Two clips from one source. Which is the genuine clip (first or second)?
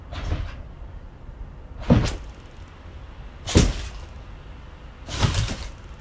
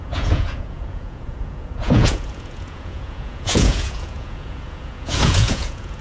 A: first